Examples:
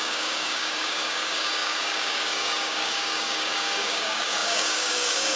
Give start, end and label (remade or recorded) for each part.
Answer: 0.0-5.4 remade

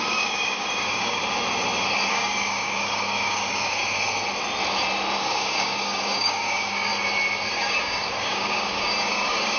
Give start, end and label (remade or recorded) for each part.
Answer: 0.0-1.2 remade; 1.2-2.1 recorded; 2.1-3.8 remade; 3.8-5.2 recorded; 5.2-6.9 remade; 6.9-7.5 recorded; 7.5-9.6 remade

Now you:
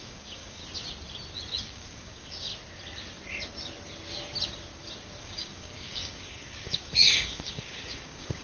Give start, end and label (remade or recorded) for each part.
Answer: 0.0-0.6 remade; 0.6-1.6 recorded; 1.6-2.5 remade; 2.5-5.2 recorded; 5.2-8.4 remade

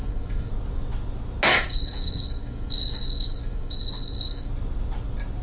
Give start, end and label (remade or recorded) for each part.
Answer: 0.0-0.5 remade; 0.5-1.5 recorded; 1.5-4.5 remade; 4.5-5.4 recorded

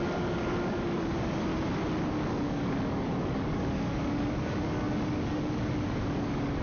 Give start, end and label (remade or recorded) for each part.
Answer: 0.0-1.5 remade; 1.5-2.1 recorded; 2.1-6.6 remade

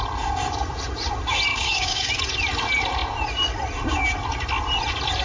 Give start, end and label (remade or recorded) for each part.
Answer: 0.0-1.5 recorded; 1.5-2.1 remade; 2.1-5.2 recorded